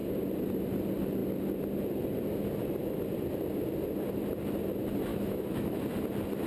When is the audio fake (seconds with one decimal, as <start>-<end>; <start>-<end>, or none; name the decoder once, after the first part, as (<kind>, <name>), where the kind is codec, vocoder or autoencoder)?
5.1-5.8 (autoencoder, DAC-VAE)